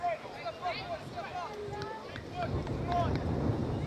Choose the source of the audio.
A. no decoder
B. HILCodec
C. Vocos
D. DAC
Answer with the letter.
A